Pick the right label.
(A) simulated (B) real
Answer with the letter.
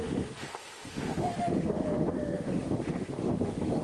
A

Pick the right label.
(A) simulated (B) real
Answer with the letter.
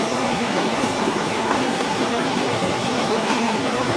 A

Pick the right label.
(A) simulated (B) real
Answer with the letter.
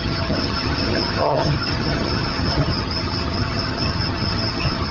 A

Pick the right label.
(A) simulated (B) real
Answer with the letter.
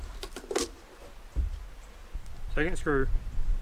B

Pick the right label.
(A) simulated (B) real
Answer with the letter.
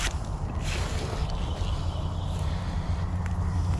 B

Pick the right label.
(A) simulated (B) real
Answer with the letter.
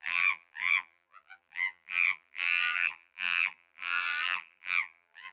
A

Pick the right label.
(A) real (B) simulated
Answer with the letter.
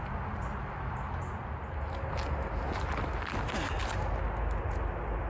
A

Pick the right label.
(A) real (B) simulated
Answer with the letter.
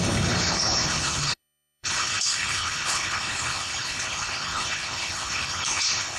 B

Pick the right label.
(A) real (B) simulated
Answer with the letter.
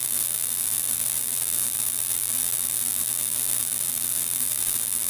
B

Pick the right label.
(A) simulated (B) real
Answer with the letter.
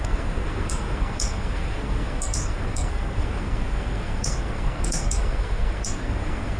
A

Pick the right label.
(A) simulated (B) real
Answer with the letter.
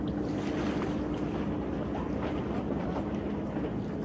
B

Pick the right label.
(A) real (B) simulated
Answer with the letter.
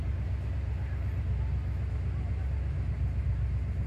A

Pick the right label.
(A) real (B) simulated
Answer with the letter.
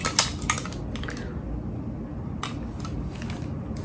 A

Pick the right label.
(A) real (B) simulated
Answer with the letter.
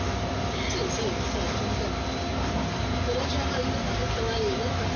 A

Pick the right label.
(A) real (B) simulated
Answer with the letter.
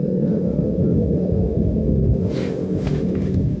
B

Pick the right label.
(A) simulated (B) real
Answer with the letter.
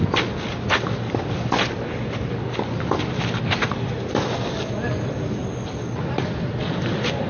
B